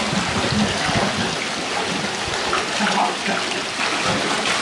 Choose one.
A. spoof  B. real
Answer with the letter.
B